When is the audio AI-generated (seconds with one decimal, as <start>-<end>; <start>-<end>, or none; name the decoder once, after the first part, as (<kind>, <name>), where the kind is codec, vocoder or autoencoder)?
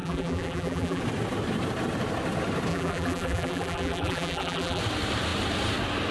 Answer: 0.0-1.0 (vocoder, BigVGAN v2); 2.7-4.8